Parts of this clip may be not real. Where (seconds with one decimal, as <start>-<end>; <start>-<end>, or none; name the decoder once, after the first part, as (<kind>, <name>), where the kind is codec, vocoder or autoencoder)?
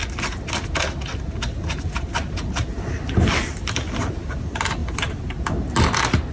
none